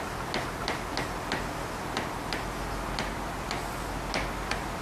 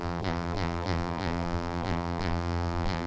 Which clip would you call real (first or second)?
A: first